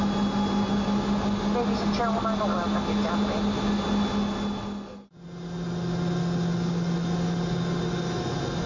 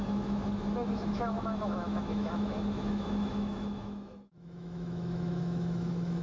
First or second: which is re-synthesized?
second